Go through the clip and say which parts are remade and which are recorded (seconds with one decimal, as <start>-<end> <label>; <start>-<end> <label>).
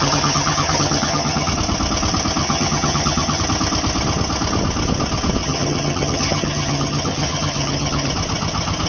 0.0-1.5 remade; 1.5-2.4 recorded; 2.4-3.4 remade; 3.4-5.4 recorded; 5.4-8.1 remade; 8.1-8.9 recorded